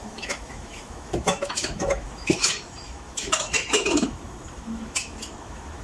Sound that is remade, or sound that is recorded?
remade